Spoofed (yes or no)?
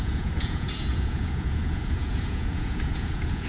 yes